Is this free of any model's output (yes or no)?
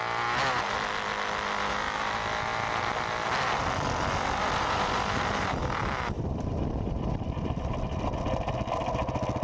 yes